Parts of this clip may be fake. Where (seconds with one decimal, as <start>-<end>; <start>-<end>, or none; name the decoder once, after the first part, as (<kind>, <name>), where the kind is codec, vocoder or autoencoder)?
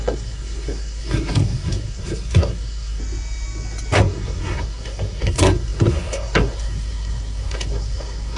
0.0-3.0 (codec, SNAC); 4.0-8.4